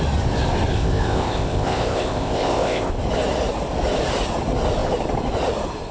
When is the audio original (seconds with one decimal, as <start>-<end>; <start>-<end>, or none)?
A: 0.0-0.7; 2.9-5.9